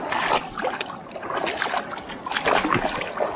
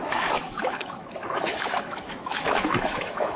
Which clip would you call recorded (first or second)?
first